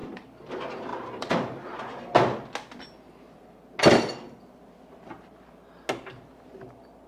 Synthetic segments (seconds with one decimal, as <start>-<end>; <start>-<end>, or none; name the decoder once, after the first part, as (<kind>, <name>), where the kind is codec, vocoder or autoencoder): 0.0-0.5 (vocoder, BigVGAN v2); 0.9-1.9